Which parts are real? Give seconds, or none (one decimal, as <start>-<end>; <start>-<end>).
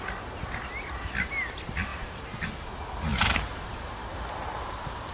0.0-1.9; 2.5-3.1